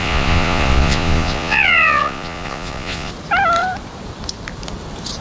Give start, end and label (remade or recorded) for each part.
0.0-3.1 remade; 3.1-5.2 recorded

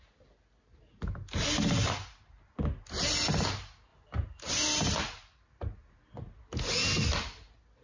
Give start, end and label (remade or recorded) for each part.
0.0-7.8 recorded

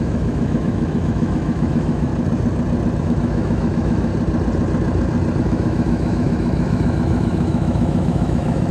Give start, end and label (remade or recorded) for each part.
0.0-2.1 remade; 2.1-3.0 recorded; 3.0-4.1 remade; 4.1-5.4 recorded; 5.4-8.7 remade

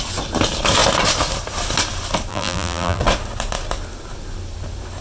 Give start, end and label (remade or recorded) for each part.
0.0-2.3 recorded; 2.3-3.0 remade; 3.0-5.0 recorded

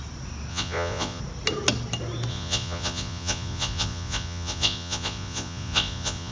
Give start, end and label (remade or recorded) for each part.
0.0-0.5 recorded; 0.5-1.2 remade; 1.2-2.3 recorded; 2.3-6.3 remade